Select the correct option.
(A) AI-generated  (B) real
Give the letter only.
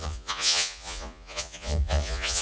A